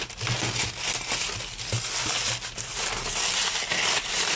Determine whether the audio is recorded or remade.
recorded